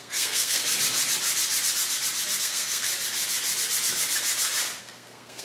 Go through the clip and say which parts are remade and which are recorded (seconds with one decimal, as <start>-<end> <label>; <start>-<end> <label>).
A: 0.0-0.6 remade; 0.6-2.4 recorded; 2.4-2.9 remade; 2.9-4.8 recorded; 4.8-5.4 remade